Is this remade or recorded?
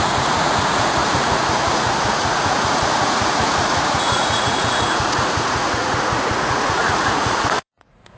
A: remade